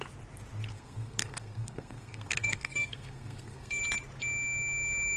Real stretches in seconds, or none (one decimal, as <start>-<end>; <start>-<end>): 0.0-0.7; 3.8-5.2